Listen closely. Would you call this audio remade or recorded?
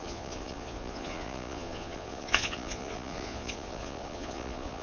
remade